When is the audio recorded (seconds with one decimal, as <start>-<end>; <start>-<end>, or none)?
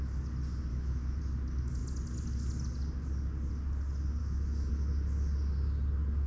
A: 0.0-0.7; 1.2-4.2; 4.7-6.3